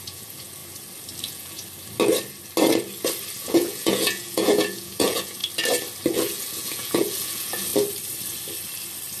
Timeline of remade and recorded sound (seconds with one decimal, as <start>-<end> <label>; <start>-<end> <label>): 0.0-0.6 remade; 0.6-1.2 recorded; 1.2-1.6 remade; 1.6-3.4 recorded; 3.4-5.4 remade; 5.4-6.1 recorded; 6.1-7.7 remade; 7.7-9.2 recorded